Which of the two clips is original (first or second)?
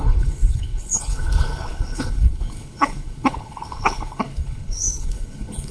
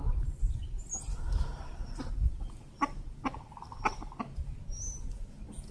second